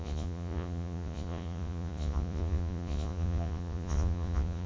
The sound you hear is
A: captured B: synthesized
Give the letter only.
B